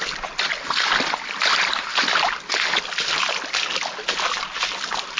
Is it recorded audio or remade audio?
recorded